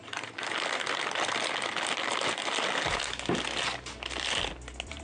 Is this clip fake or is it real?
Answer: real